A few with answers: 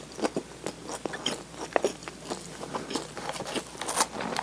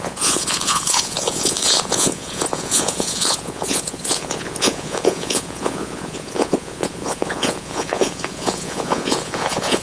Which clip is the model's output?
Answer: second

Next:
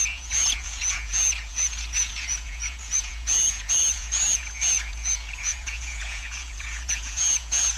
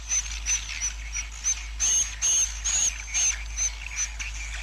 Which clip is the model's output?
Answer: first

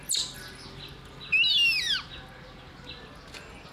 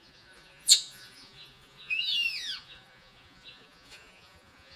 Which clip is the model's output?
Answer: second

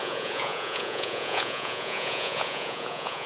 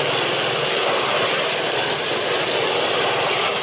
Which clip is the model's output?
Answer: first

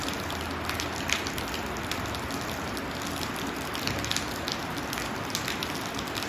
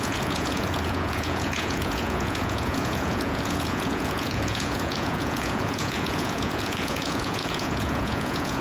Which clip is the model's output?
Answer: second